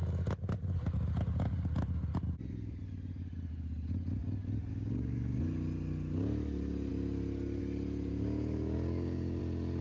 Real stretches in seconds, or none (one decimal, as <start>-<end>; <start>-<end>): 0.0-4.7; 5.4-8.1; 9.4-9.8

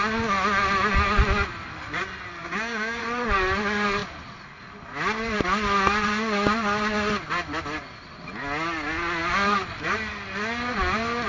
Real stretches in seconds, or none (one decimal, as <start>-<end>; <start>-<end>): 0.0-2.4; 3.0-11.3